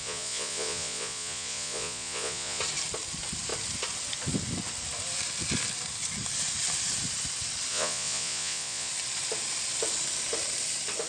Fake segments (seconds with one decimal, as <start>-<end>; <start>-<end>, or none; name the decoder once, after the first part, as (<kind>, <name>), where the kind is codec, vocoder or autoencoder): 0.0-2.6 (vocoder, Vocos); 7.7-8.9